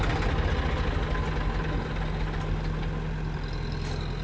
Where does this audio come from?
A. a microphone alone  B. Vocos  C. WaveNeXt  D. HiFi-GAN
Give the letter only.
A